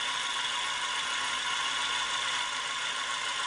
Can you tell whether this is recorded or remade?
recorded